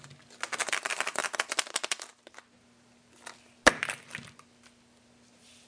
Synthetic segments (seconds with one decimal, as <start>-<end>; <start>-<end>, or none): none